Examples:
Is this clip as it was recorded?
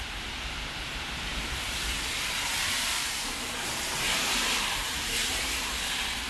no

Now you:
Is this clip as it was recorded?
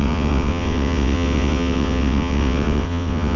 no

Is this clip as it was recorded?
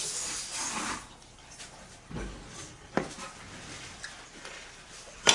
yes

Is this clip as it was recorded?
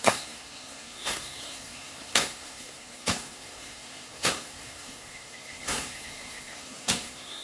no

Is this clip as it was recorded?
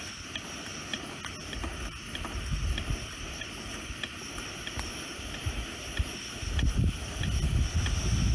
yes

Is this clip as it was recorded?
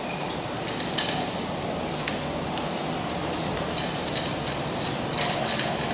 yes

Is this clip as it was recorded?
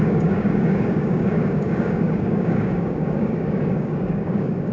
no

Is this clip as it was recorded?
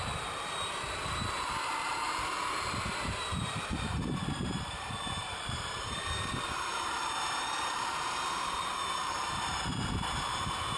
no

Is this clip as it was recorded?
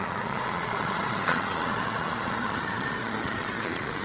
no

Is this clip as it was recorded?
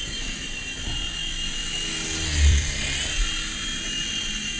no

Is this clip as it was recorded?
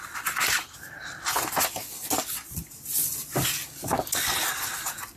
yes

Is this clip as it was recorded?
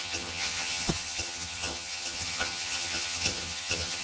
no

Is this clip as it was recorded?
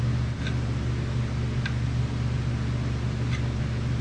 yes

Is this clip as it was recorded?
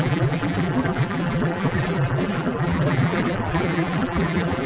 no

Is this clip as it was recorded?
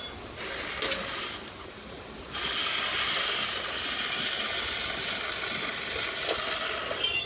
yes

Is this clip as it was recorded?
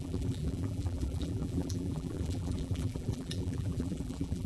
no